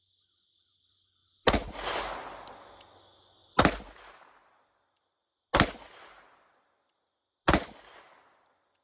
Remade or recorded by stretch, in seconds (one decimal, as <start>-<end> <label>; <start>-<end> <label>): 0.0-8.8 recorded